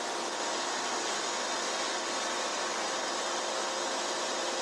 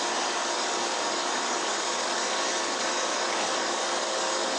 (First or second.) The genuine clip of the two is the first